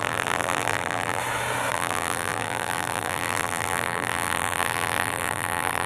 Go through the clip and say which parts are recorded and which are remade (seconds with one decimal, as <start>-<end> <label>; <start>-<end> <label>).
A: 0.0-1.2 remade; 1.2-1.7 recorded; 1.7-5.9 remade